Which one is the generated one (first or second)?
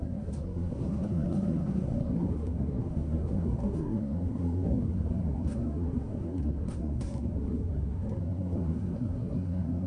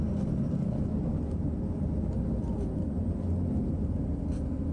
first